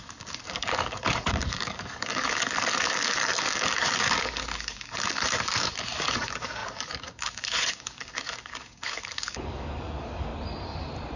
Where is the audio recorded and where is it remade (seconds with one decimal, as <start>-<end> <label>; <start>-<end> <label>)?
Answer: 0.0-10.3 remade; 10.3-11.2 recorded